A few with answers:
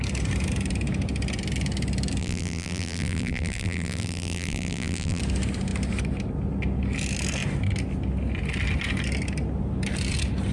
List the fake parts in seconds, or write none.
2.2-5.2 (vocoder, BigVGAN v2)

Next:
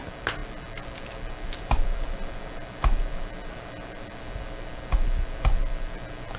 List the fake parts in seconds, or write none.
none

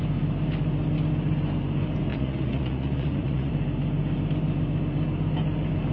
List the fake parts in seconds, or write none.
2.1-3.5 (vocoder, Vocos)

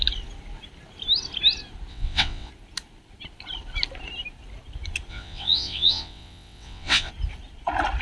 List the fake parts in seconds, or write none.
1.9-2.5 (vocoder, WaveNeXt); 5.1-7.1

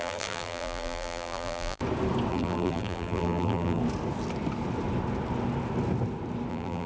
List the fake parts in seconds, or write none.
0.0-1.8 (vocoder, BigVGAN v2); 2.3-3.8; 6.5-6.9